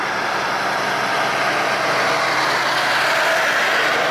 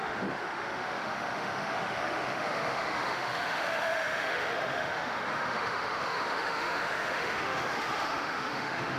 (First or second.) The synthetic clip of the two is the second